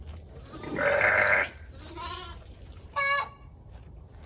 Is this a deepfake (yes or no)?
no